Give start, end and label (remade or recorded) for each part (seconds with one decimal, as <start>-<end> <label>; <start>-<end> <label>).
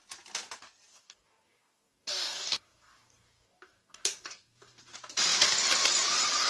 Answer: 0.0-0.9 recorded; 0.9-4.8 remade; 4.8-6.5 recorded